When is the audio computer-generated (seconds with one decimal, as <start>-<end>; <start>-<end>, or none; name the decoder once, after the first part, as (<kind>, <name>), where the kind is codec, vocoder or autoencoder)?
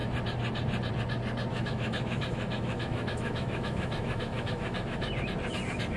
1.5-5.1 (autoencoder, DAC-VAE)